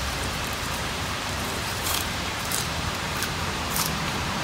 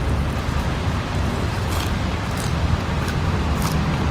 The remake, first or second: first